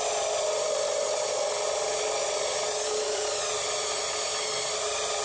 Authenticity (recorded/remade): recorded